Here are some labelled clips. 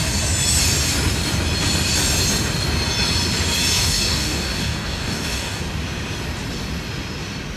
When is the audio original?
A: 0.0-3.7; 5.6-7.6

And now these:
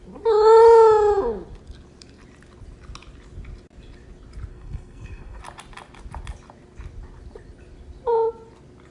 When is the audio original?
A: 0.0-4.5; 5.4-8.9

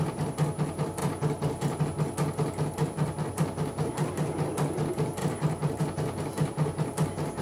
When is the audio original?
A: 0.0-1.0; 1.8-5.2; 5.8-7.4